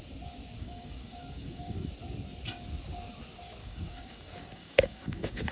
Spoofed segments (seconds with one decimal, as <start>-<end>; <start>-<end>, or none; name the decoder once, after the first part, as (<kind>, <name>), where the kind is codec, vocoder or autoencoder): 0.6-1.9 (codec, DAC); 3.6-5.5

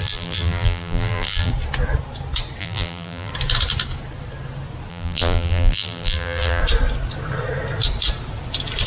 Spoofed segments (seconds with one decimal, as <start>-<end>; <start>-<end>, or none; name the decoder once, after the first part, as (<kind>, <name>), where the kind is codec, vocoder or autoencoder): 0.0-1.5 (vocoder, BigVGAN v2); 2.6-3.3; 4.9-6.6

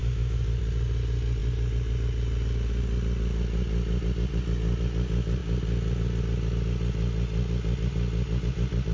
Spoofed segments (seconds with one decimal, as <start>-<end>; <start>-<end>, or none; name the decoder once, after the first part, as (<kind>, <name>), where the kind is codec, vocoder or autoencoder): 0.0-0.6 (autoencoder, DAC-VAE)

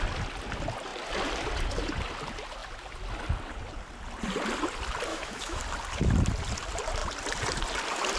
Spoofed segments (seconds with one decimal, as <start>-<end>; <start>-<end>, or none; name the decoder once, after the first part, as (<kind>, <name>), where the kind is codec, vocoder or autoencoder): 5.1-5.6 (autoencoder, DAC-VAE)

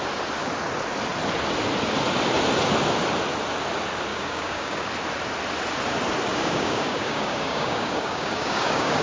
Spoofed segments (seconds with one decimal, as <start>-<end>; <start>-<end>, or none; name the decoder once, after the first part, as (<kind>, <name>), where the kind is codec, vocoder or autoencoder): 4.1-4.9 (codec, DAC); 6.3-9.0